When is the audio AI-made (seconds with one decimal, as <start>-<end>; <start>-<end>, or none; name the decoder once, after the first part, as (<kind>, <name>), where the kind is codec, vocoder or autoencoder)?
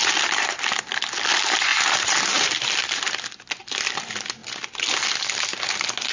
0.0-0.8 (vocoder, BigVGAN v2); 1.7-3.6